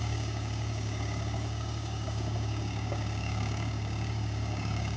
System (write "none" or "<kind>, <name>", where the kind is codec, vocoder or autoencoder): codec, DAC